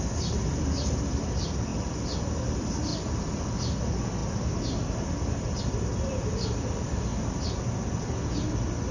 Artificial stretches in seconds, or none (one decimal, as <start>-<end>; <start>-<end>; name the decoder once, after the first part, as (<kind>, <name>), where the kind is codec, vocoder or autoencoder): 2.9-3.5 (vocoder, BigVGAN v2)